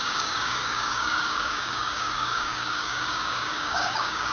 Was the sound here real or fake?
fake